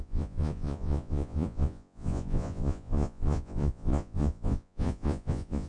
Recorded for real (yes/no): no